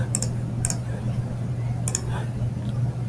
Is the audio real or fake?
real